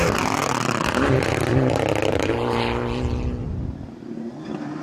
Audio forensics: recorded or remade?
recorded